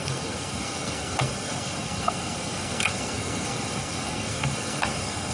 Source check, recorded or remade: remade